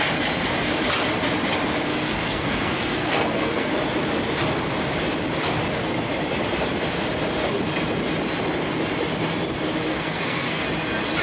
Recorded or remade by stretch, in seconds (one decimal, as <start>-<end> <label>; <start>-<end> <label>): 0.0-1.9 recorded; 1.9-3.7 remade; 3.7-9.9 recorded; 9.9-10.6 remade; 10.6-11.2 recorded